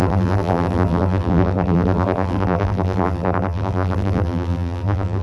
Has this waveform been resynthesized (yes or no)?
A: yes